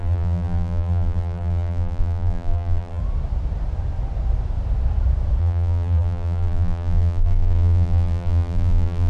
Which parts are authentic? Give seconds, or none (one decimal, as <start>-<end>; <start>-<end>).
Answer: 3.0-5.4